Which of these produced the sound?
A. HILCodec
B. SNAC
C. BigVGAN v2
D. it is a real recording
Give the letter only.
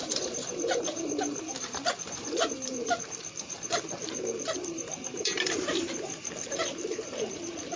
C